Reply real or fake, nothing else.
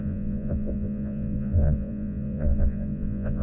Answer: fake